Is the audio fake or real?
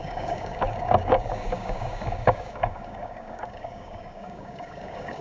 fake